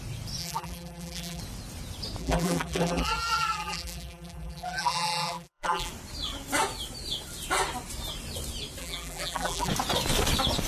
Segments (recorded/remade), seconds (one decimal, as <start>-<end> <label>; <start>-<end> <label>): 0.0-0.4 recorded; 0.4-1.4 remade; 1.4-2.2 recorded; 2.2-5.9 remade; 5.9-8.8 recorded; 8.8-9.7 remade; 9.7-10.7 recorded